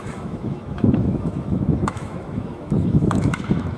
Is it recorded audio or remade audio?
remade